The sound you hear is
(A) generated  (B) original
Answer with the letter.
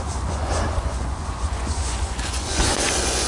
A